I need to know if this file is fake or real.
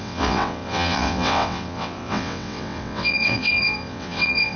fake